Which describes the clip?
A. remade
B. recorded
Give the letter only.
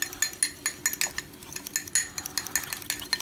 B